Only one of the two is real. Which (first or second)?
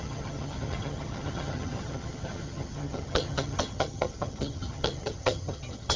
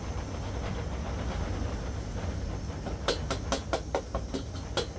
second